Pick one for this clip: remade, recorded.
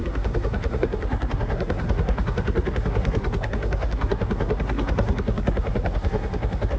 remade